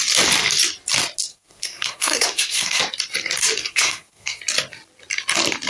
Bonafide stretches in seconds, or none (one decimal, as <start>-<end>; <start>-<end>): 0.0-1.3; 2.8-3.6; 4.4-5.7